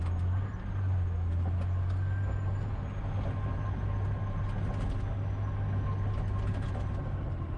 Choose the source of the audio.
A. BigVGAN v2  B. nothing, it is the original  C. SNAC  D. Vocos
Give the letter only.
B